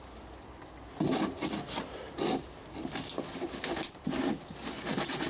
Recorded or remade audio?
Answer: recorded